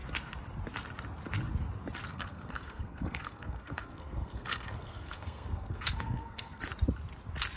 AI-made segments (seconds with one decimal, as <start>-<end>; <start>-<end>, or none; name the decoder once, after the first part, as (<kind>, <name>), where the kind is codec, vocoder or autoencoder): 2.1-6.6 (codec, SNAC)